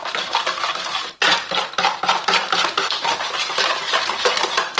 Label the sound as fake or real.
real